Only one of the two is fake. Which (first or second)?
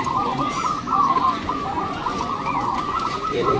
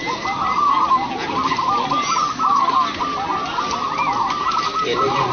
first